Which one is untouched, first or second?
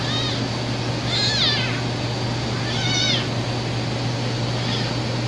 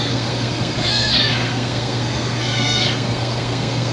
first